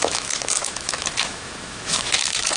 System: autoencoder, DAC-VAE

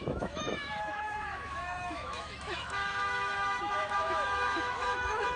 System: autoencoder, DAC-VAE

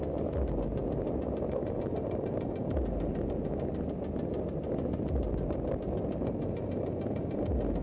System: none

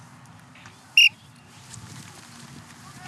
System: none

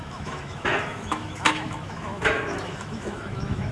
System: autoencoder, DAC-VAE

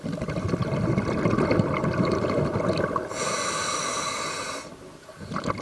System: none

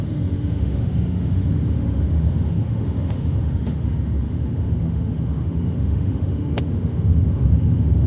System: autoencoder, DAC-VAE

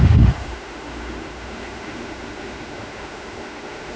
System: autoencoder, DAC-VAE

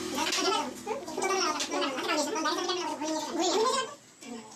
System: none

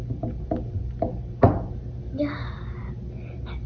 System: none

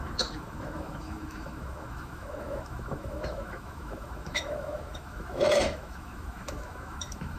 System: autoencoder, DAC-VAE